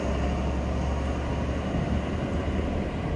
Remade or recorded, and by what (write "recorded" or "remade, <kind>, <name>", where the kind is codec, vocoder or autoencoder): recorded